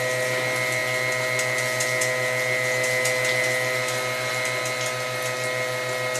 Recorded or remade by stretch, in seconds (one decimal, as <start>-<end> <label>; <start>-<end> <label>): 0.0-6.2 recorded